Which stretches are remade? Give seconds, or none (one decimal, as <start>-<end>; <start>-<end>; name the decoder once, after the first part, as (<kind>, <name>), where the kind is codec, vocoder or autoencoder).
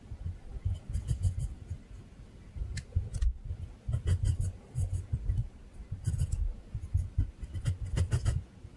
5.4-6.1 (vocoder, BigVGAN v2)